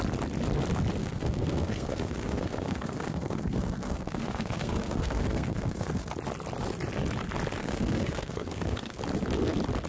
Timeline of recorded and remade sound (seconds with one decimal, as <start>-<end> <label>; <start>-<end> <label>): 0.0-1.0 recorded; 1.0-6.1 remade; 6.1-7.6 recorded; 7.6-9.0 remade; 9.0-9.9 recorded